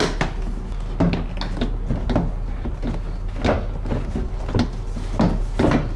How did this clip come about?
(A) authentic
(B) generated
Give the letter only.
A